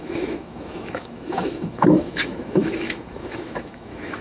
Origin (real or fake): fake